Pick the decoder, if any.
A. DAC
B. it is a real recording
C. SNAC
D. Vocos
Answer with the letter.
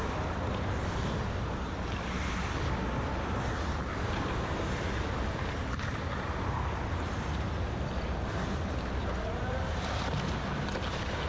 B